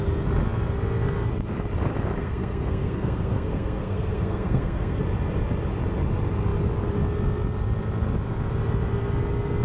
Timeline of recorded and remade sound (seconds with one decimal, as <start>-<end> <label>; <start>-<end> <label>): 0.0-2.2 recorded; 2.2-5.0 remade; 5.0-9.6 recorded

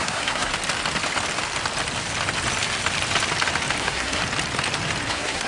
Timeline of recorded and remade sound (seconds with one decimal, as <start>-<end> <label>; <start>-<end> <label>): 0.0-0.5 remade; 0.5-3.8 recorded; 3.8-4.2 remade; 4.2-5.1 recorded; 5.1-5.5 remade

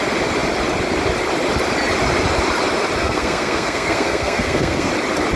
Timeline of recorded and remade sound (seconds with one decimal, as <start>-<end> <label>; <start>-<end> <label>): 0.0-3.0 recorded; 3.0-4.9 remade; 4.9-5.4 recorded

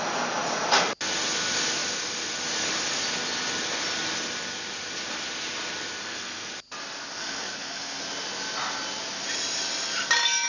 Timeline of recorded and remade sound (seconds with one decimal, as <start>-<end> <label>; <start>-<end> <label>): 0.0-6.0 recorded; 6.0-6.5 remade; 6.5-7.1 recorded; 7.1-8.0 remade; 8.0-10.5 recorded